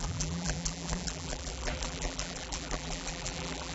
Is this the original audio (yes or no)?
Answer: no